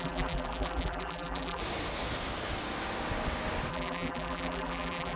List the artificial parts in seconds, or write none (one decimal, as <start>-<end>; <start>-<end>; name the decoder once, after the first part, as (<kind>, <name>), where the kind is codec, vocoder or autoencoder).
0.0-1.6 (vocoder, BigVGAN v2); 3.7-5.2